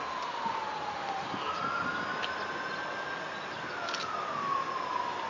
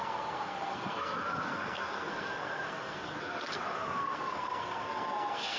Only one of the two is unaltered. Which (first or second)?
first